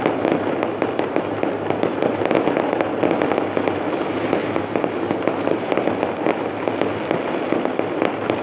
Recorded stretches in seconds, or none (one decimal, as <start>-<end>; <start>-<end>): 0.0-4.4; 6.3-8.4